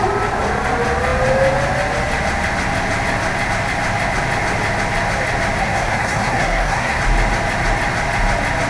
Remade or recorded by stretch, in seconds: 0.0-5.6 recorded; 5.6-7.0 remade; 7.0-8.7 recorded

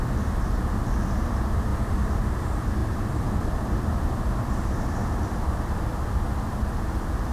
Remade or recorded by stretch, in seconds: 0.0-1.7 recorded; 1.7-2.2 remade; 2.2-2.8 recorded; 2.8-5.9 remade; 5.9-7.3 recorded

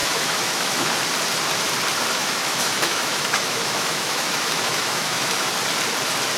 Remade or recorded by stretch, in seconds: 0.0-0.9 remade; 0.9-2.2 recorded; 2.2-5.5 remade; 5.5-6.4 recorded

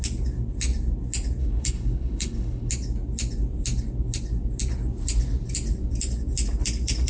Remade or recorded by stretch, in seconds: 0.0-1.4 recorded; 1.4-2.7 remade; 2.7-7.1 recorded

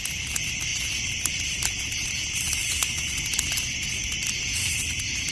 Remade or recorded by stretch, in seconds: 0.0-2.6 recorded; 2.6-3.2 remade; 3.2-5.3 recorded

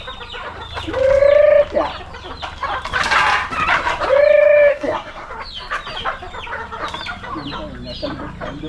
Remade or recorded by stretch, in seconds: 0.0-4.7 recorded; 4.7-5.3 remade; 5.3-8.7 recorded

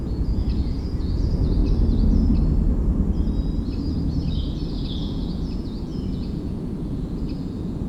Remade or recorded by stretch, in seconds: 0.0-1.6 remade; 1.6-4.7 recorded; 4.7-7.9 remade